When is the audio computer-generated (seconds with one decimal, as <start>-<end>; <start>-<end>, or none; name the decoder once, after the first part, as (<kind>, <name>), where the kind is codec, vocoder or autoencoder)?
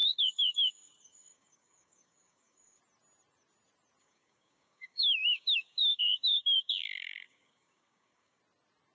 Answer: 0.0-2.8 (codec, DAC); 4.0-8.4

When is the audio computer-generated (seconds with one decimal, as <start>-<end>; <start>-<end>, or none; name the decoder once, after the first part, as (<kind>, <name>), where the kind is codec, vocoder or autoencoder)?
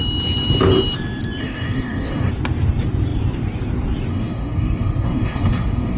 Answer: 1.4-2.3 (codec, DAC); 4.1-6.0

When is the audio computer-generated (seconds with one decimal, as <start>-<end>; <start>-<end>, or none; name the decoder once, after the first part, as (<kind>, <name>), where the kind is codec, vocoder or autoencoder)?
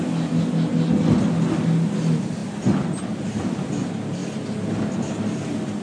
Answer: none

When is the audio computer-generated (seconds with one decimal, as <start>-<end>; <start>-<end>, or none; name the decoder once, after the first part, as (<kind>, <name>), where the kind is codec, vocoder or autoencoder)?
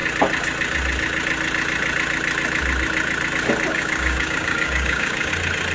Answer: 3.7-5.3 (codec, DAC)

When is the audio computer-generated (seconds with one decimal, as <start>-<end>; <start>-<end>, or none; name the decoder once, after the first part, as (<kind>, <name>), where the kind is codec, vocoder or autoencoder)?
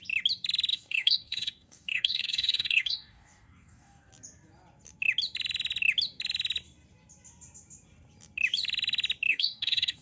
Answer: 0.7-4.1 (codec, DAC); 9.3-10.0